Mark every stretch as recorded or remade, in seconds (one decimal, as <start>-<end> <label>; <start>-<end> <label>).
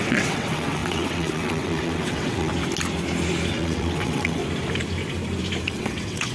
0.0-2.5 remade; 2.5-3.5 recorded; 3.5-4.4 remade; 4.4-5.7 recorded; 5.7-6.3 remade